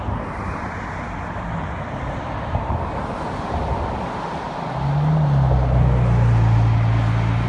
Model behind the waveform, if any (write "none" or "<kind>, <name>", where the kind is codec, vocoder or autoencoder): none